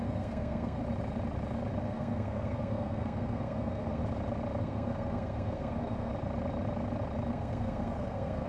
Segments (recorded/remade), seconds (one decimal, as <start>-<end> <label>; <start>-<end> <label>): 0.0-0.8 remade; 0.8-1.8 recorded; 1.8-4.0 remade; 4.0-4.6 recorded; 4.6-6.1 remade; 6.1-7.3 recorded; 7.3-8.5 remade